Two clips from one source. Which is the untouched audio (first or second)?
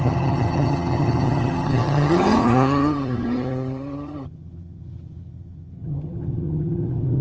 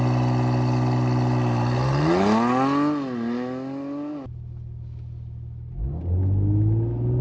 second